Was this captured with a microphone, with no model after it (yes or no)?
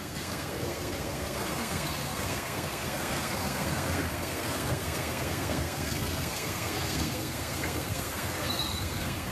no